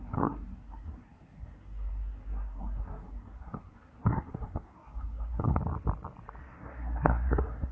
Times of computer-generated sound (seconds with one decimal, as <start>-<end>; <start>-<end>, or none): 0.0-5.6; 6.4-7.7

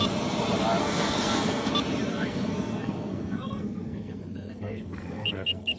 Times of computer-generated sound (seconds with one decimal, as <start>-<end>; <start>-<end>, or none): 0.8-1.7; 2.1-5.8

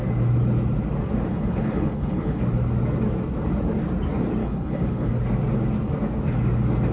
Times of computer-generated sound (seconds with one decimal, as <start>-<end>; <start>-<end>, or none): 1.3-2.4; 4.4-5.1